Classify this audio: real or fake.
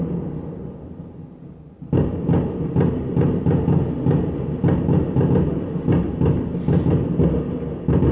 real